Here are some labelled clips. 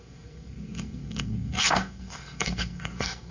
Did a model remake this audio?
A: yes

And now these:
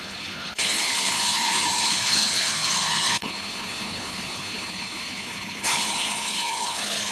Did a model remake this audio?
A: yes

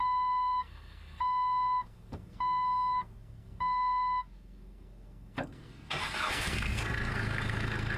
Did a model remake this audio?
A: yes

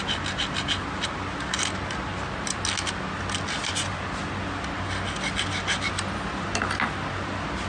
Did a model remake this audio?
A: no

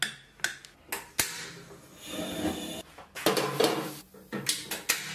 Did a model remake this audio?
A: no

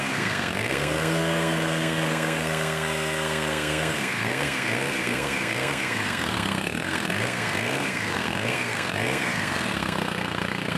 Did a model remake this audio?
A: yes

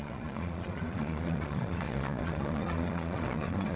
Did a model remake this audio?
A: yes